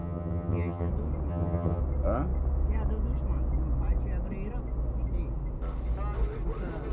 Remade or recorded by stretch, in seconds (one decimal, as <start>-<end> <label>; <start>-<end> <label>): 0.0-0.9 remade; 0.9-1.3 recorded; 1.3-1.8 remade; 1.8-6.9 recorded